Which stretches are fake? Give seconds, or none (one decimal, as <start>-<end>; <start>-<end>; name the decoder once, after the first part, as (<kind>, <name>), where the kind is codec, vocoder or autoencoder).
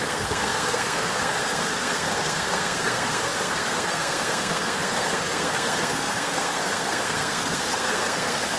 0.0-8.6 (codec, SNAC)